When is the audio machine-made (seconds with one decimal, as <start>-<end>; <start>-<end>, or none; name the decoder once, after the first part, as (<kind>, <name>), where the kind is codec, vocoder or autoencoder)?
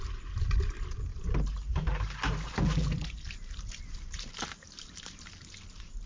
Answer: 1.7-5.3 (vocoder, BigVGAN v2)